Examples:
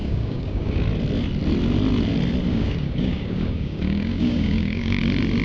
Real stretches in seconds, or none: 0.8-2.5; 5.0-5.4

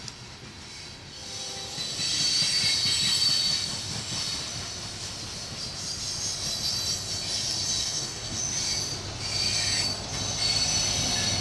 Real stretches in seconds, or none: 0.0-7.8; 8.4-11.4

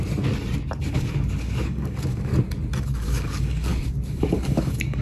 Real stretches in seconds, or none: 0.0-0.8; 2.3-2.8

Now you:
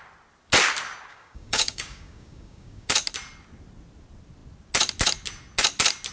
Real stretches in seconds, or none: 0.0-1.1; 2.9-6.1

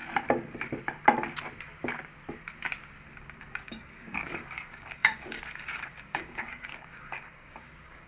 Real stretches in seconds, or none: 0.0-3.2

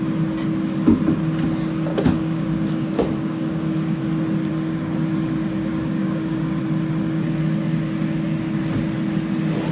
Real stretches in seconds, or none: 0.0-1.9; 4.0-4.5; 6.6-9.7